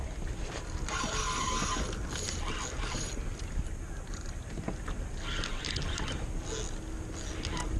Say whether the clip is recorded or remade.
recorded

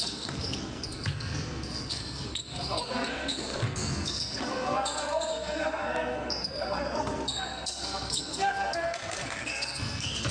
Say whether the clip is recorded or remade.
remade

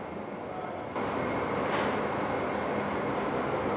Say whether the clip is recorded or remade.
recorded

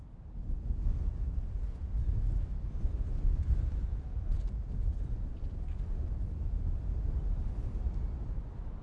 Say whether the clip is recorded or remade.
recorded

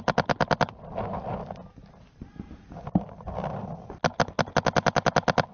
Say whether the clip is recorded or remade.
recorded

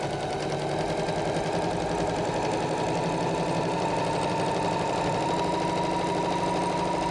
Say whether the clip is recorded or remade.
recorded